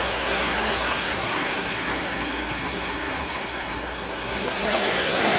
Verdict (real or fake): fake